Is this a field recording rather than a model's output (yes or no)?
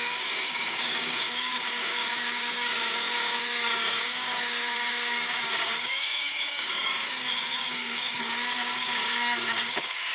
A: no